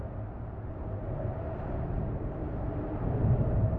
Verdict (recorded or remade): remade